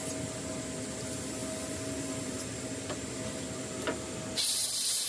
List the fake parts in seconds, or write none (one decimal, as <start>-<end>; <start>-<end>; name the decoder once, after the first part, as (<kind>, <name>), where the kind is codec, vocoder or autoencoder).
none